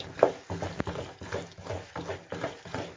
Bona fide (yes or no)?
yes